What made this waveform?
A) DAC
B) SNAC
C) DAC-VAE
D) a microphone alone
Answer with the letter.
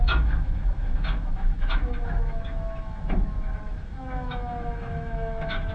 C